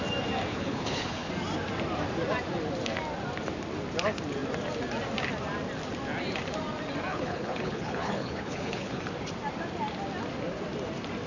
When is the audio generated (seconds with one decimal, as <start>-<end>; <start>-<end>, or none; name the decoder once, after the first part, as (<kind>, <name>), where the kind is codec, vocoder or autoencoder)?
0.5-1.3 (codec, HILCodec); 7.1-9.0